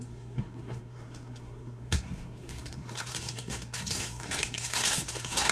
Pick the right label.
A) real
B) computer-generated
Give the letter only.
B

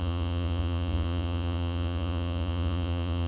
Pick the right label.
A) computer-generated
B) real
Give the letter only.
A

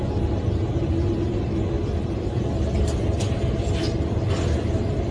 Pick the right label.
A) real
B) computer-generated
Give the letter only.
A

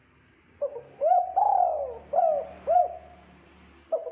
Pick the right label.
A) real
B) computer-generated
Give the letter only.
A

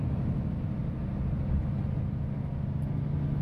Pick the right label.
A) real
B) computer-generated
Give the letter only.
A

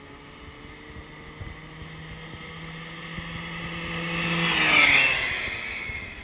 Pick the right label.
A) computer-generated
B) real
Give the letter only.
B